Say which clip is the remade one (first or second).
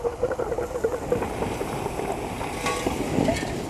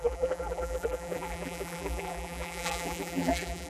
second